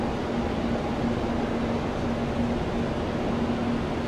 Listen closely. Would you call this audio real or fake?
real